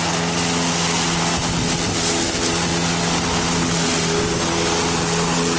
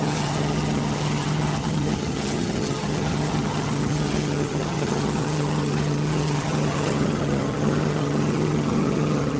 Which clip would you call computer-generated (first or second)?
second